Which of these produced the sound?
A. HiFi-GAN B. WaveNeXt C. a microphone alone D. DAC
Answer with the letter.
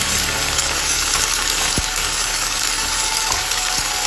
D